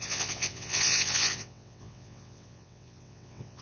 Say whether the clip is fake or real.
fake